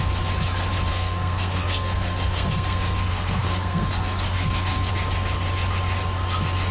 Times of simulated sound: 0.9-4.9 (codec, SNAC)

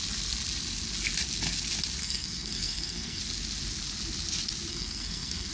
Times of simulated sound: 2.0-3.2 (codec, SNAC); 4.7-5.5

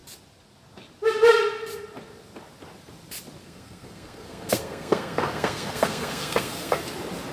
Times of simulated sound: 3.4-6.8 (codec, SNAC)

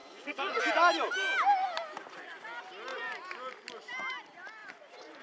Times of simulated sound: 0.0-0.6 (codec, SNAC)

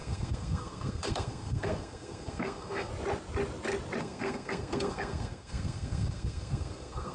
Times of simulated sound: 0.0-2.9 (codec, SNAC); 4.0-7.1

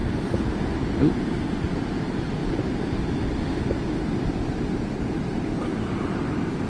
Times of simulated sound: none

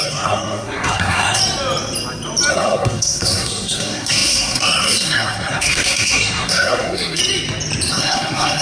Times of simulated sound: 0.0-1.4 (codec, SNAC); 2.5-7.2; 7.9-8.6